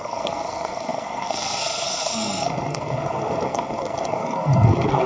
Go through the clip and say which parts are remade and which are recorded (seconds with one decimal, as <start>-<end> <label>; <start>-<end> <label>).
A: 0.0-5.1 remade